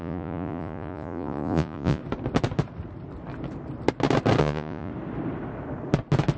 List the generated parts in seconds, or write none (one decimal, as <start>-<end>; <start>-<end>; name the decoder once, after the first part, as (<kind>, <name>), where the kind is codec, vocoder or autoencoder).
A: 0.0-2.0 (vocoder, Vocos); 4.4-4.9